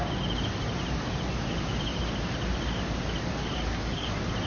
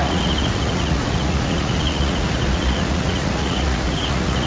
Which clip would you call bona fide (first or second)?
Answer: first